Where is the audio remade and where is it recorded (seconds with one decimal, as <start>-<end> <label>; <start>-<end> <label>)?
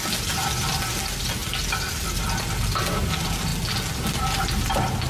0.0-1.4 remade; 1.4-2.0 recorded; 2.0-3.5 remade; 3.5-4.1 recorded; 4.1-5.1 remade